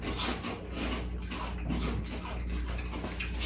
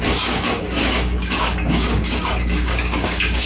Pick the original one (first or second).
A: first